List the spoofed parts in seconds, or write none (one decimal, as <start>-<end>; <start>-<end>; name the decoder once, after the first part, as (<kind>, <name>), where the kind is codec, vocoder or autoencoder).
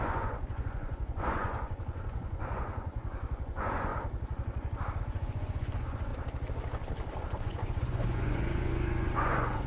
0.0-3.9 (vocoder, Vocos); 5.0-6.1; 7.4-9.7